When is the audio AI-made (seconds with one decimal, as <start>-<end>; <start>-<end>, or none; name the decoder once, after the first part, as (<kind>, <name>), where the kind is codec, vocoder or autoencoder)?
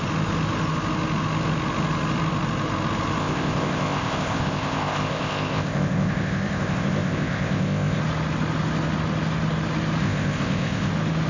3.2-8.0 (codec, ZipCodec); 10.0-10.9